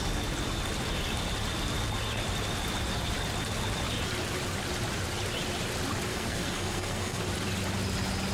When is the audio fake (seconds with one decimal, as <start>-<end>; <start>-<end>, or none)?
6.1-7.2